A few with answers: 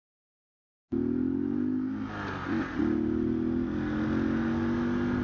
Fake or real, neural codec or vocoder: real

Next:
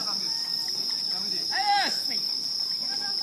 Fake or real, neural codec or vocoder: real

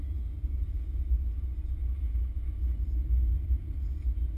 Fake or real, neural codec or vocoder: real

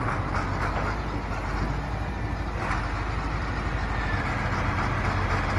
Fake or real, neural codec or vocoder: real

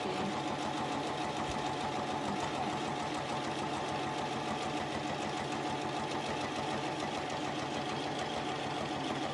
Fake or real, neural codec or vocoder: real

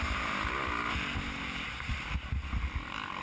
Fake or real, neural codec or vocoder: real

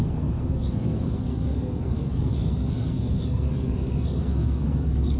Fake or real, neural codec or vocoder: fake, codec, SNAC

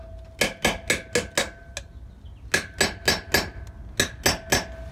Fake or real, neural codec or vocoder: real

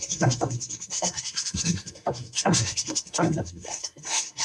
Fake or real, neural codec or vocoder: fake, codec, SNAC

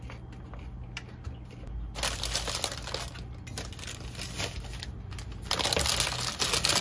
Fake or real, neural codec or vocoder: real